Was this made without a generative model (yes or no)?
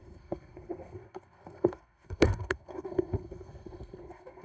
no